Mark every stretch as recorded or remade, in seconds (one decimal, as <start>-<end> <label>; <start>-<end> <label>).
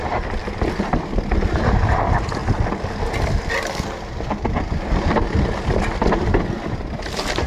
0.0-0.4 remade; 0.4-1.6 recorded; 1.6-2.4 remade; 2.4-6.9 recorded; 6.9-7.5 remade